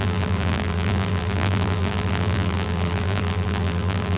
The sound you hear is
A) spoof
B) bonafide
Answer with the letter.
A